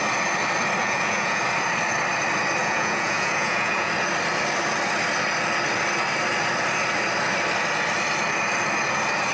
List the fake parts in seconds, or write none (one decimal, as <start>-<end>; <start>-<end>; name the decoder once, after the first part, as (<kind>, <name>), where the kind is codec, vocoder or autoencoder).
0.8-1.4 (vocoder, Vocos); 2.6-3.9